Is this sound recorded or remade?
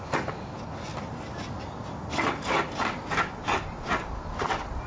recorded